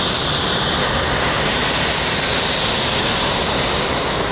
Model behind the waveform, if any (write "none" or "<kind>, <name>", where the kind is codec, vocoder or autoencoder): none